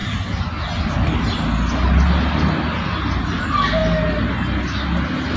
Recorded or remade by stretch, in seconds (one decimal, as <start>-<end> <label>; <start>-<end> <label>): 0.0-5.4 recorded